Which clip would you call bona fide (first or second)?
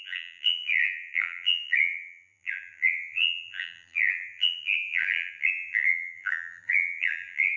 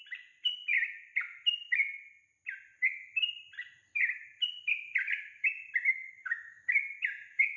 second